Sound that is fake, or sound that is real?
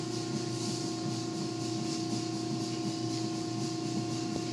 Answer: real